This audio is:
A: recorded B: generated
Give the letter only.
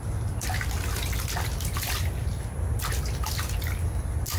A